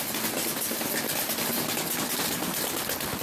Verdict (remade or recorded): recorded